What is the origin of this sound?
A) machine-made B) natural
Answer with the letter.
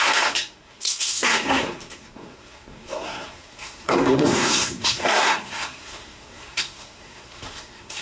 A